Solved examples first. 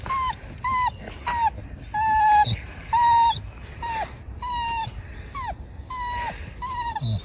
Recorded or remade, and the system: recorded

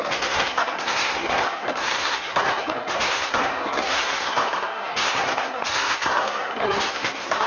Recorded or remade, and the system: remade, codec, SNAC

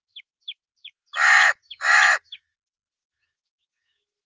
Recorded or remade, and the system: remade, autoencoder, DAC-VAE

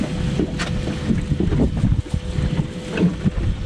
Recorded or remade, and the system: recorded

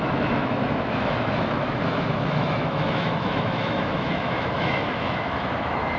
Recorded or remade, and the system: remade, autoencoder, DAC-VAE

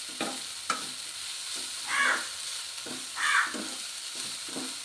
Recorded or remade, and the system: recorded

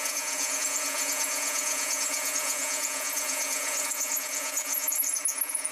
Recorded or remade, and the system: remade, vocoder, Vocos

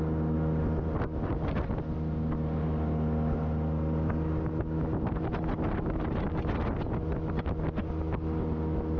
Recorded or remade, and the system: recorded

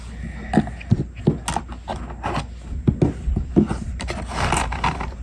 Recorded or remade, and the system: recorded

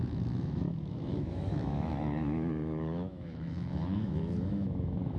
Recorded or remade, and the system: remade, autoencoder, DAC-VAE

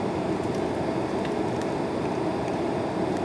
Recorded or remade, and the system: recorded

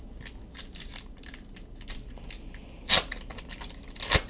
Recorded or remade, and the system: recorded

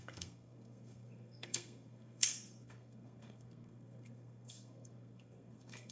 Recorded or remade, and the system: remade, codec, SNAC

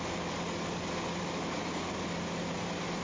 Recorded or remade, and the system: recorded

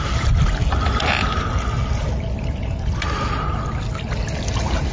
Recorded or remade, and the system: recorded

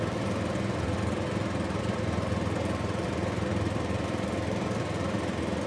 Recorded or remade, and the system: remade, vocoder, BigVGAN v2